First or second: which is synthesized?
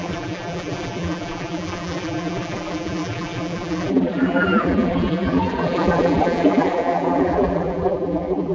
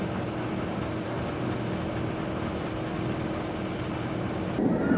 first